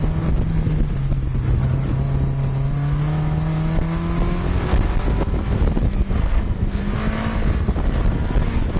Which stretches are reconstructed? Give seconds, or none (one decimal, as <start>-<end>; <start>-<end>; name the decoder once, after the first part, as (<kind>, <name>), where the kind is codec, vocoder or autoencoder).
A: 6.2-6.8 (codec, SNAC)